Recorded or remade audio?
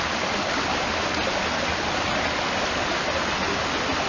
recorded